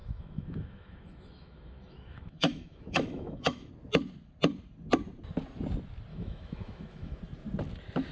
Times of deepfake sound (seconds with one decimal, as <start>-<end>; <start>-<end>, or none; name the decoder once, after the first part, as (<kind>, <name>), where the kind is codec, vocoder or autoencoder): 0.0-3.7 (autoencoder, DAC-VAE); 6.1-7.2